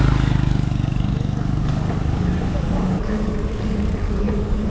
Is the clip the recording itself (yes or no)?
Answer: no